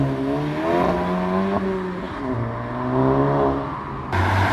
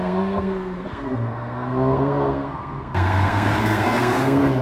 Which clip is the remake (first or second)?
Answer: second